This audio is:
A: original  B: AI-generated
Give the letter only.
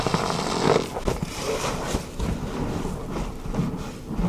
A